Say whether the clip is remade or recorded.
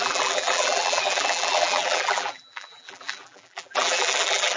remade